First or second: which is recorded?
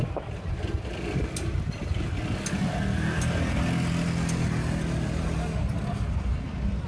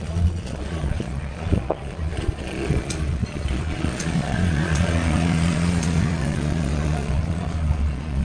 first